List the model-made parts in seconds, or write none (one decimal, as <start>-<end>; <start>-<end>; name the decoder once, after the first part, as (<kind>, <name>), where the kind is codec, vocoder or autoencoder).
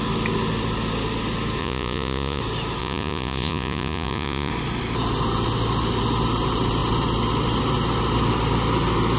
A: 1.6-2.4 (vocoder, Vocos); 2.8-4.5